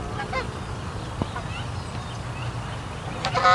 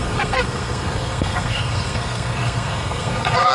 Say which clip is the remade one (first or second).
second